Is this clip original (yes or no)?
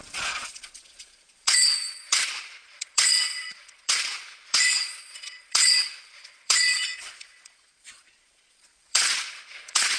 no